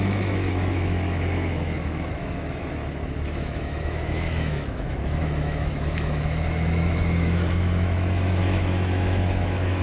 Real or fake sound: fake